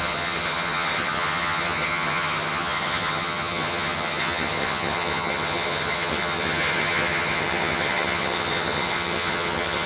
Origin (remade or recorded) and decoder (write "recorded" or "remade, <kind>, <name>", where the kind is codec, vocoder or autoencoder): remade, vocoder, HiFi-GAN